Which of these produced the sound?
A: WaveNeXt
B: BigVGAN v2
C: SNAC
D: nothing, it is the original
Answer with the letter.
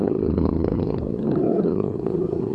C